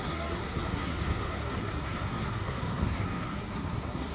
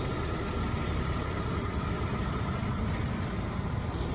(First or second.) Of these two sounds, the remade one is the first